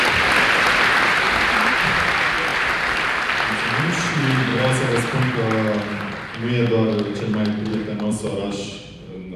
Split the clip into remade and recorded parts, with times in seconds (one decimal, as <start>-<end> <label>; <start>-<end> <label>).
0.0-2.5 recorded; 2.5-3.1 remade; 3.1-7.7 recorded; 7.7-9.4 remade